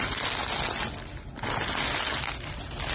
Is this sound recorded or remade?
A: recorded